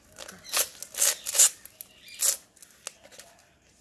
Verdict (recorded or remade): recorded